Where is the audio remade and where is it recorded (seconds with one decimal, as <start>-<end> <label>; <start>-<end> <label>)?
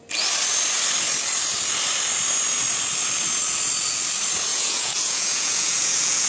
0.0-4.5 recorded; 4.5-6.3 remade